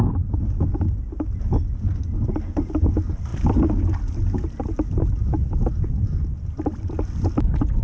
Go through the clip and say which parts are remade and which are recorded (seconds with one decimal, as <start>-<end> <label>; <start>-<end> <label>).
0.0-3.3 recorded; 3.3-4.0 remade; 4.0-7.8 recorded